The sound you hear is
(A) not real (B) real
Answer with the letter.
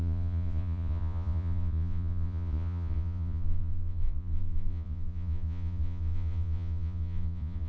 A